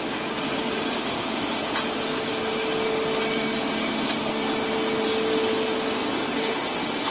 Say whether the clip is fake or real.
real